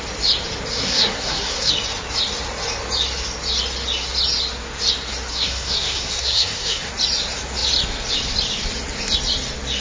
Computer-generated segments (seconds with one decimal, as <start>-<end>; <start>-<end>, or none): 0.7-1.7; 5.3-6.9